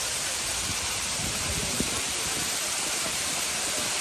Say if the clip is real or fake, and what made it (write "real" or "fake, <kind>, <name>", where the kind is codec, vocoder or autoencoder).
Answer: fake, vocoder, BigVGAN v2